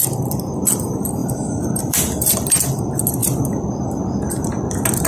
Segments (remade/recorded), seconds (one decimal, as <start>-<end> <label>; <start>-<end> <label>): 0.0-1.2 recorded; 1.2-2.8 remade; 2.8-5.1 recorded